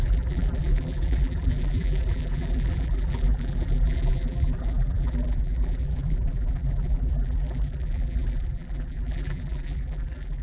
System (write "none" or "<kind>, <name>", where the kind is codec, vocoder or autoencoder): vocoder, BigVGAN v2